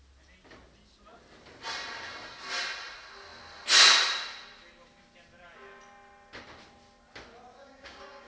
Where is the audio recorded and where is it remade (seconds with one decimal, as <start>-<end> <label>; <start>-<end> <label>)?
0.0-7.6 recorded; 7.6-8.3 remade

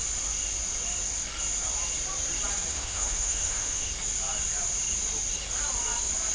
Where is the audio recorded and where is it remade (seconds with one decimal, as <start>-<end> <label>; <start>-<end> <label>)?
0.0-2.7 recorded; 2.7-3.9 remade; 3.9-6.3 recorded

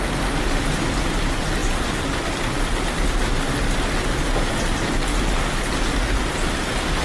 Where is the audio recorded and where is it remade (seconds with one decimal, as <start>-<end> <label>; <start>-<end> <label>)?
0.0-7.0 recorded

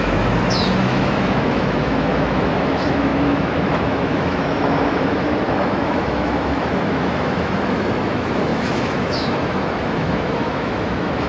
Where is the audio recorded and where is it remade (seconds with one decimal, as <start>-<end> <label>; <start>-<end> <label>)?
0.0-11.3 remade